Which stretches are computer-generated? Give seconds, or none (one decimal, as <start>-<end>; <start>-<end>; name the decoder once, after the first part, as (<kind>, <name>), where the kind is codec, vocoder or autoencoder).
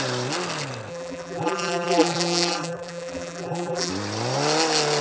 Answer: 0.9-3.9 (vocoder, BigVGAN v2)